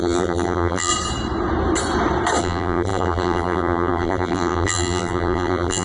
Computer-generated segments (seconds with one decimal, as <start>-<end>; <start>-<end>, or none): 0.0-0.9; 2.4-5.8